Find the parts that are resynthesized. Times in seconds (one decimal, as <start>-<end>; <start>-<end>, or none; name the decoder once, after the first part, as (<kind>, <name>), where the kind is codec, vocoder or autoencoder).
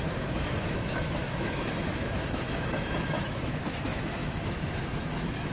0.0-5.5 (autoencoder, DAC-VAE)